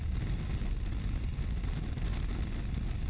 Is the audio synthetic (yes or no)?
no